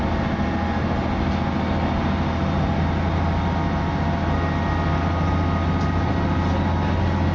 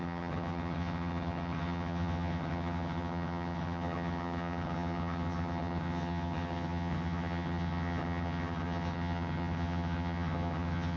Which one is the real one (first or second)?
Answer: first